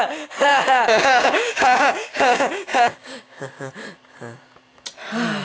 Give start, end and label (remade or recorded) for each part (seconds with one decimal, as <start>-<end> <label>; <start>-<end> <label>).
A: 0.0-0.5 recorded; 0.5-3.7 remade; 3.7-5.4 recorded